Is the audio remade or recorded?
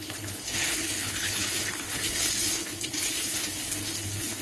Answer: remade